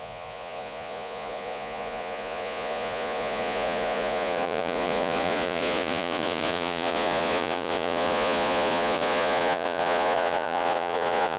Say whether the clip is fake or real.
fake